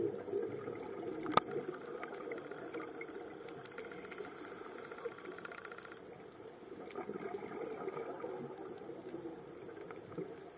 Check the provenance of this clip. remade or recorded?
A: recorded